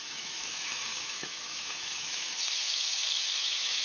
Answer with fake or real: fake